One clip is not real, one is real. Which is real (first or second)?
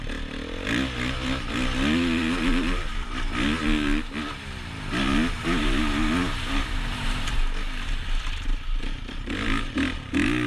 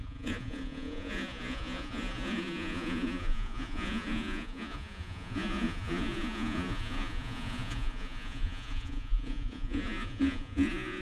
first